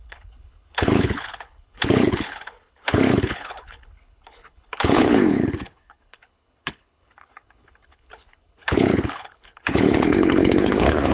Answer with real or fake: fake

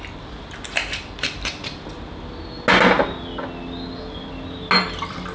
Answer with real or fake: real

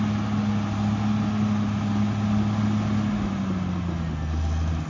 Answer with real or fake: real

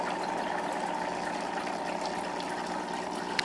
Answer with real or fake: real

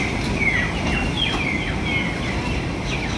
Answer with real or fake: real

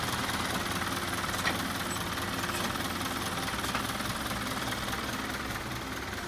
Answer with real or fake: real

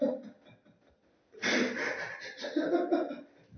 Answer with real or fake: real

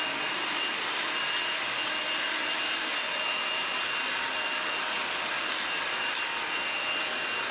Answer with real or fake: real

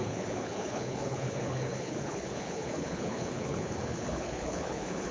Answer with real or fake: fake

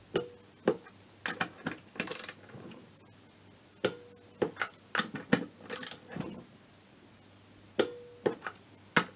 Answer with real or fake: real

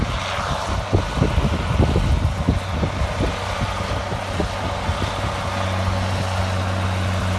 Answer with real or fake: real